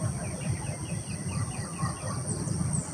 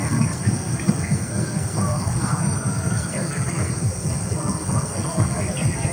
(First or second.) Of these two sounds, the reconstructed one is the second